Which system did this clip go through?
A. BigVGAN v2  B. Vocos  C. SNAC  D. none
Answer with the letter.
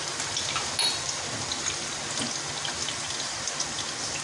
D